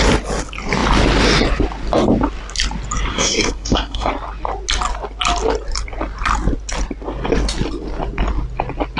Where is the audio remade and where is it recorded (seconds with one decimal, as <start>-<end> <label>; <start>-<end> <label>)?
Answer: 0.0-3.1 recorded; 3.1-4.1 remade; 4.1-9.0 recorded